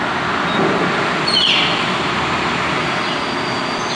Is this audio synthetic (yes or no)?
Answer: no